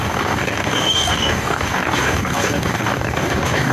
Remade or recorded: remade